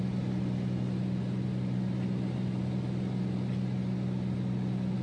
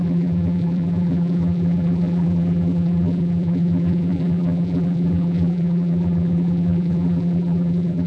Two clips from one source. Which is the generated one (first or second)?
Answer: second